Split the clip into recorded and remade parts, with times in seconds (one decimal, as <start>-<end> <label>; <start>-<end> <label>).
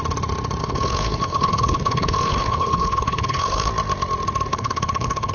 0.0-0.6 recorded; 0.6-3.7 remade; 3.7-4.5 recorded; 4.5-5.3 remade